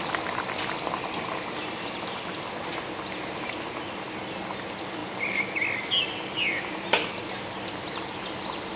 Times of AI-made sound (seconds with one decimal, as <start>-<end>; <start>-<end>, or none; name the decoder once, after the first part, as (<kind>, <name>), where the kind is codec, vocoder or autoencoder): none